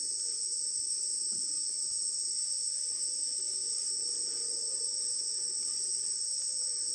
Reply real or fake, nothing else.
real